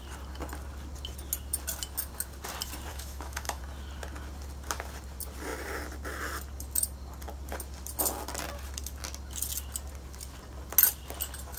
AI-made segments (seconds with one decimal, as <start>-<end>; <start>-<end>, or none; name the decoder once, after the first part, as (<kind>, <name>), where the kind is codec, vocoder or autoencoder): 2.9-3.6 (autoencoder, DAC-VAE)